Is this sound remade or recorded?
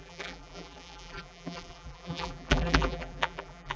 remade